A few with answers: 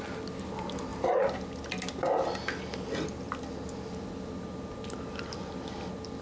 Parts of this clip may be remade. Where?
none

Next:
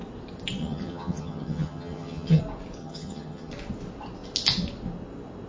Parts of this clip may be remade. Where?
0.6-2.4 (vocoder, HiFi-GAN); 2.8-3.5

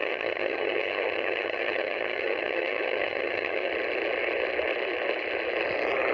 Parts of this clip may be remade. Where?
0.0-3.7 (vocoder, HiFi-GAN)

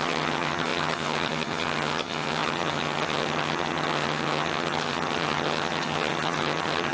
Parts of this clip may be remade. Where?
0.0-6.9 (vocoder, HiFi-GAN)

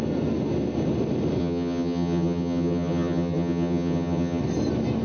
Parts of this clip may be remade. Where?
1.4-4.4 (vocoder, HiFi-GAN)

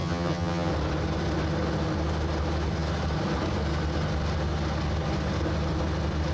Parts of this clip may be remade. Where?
0.0-0.7 (vocoder, HiFi-GAN)

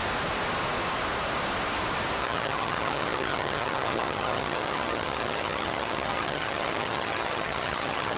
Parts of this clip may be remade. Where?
2.2-8.2 (vocoder, HiFi-GAN)

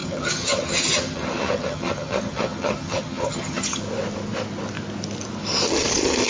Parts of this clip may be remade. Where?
0.0-3.8 (vocoder, HiFi-GAN)